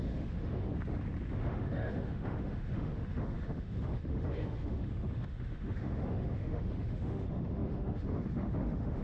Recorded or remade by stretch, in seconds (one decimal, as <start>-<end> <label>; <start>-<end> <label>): 0.0-0.7 remade; 0.7-1.3 recorded; 1.3-9.0 remade